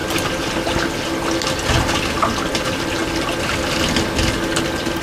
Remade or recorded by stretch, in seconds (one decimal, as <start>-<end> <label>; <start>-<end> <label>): 0.0-5.0 recorded

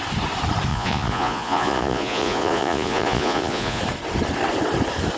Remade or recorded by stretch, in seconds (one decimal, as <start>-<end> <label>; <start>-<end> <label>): 0.0-0.7 recorded; 0.7-3.8 remade; 3.8-5.2 recorded

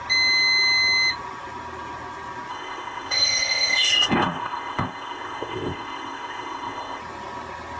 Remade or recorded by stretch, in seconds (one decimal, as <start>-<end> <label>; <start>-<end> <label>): 0.0-2.5 recorded; 2.5-7.0 remade; 7.0-7.8 recorded

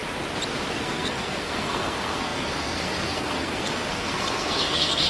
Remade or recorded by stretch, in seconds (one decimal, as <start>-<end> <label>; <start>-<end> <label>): 0.0-0.8 recorded; 0.8-5.1 remade

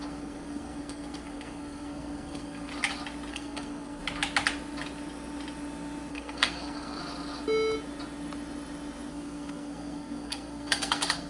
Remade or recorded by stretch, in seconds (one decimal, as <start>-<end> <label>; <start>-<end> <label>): 0.0-2.7 remade; 2.7-3.3 recorded; 3.3-4.0 remade; 4.0-6.1 recorded; 6.1-7.0 remade; 7.0-9.1 recorded; 9.1-11.3 remade

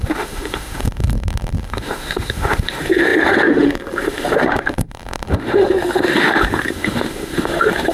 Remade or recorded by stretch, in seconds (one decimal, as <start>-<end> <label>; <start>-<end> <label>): 0.0-7.9 remade

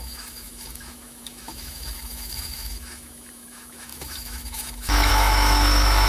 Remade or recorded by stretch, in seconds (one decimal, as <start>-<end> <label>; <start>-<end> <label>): 0.0-6.1 remade